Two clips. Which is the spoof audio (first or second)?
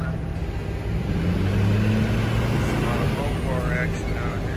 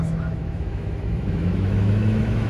second